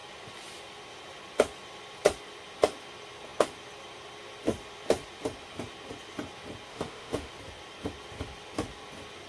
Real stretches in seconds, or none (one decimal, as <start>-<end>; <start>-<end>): 0.0-6.7; 7.3-9.3